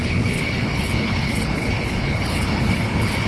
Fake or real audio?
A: fake